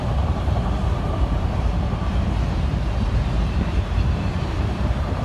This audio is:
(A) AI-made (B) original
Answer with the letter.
A